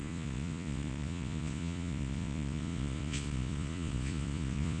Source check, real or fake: fake